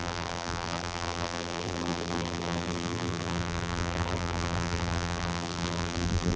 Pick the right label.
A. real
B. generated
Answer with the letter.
B